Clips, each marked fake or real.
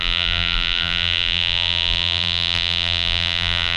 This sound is fake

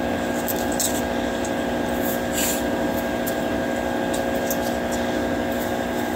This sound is real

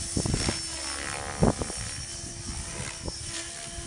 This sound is real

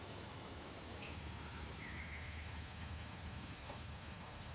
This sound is fake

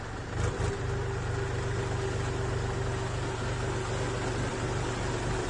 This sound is real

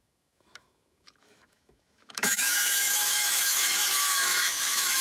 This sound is fake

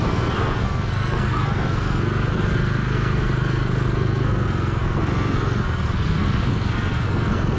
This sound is fake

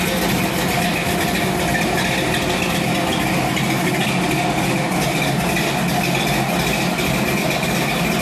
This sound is real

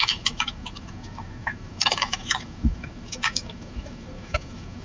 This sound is fake